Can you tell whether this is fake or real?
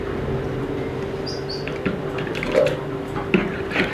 real